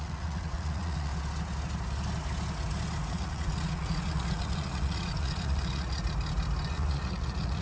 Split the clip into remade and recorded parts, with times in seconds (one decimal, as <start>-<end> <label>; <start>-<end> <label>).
0.0-1.1 remade; 1.1-3.1 recorded; 3.1-6.0 remade; 6.0-6.7 recorded; 6.7-7.6 remade